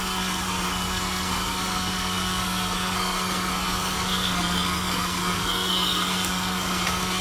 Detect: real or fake fake